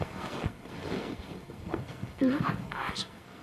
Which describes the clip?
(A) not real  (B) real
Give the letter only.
A